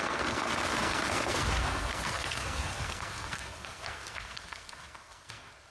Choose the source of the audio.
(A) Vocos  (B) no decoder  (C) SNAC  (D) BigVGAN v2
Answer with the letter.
C